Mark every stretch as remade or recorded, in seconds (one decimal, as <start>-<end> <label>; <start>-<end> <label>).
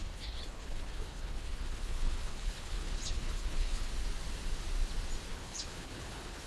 0.0-3.9 remade; 3.9-5.3 recorded; 5.3-6.5 remade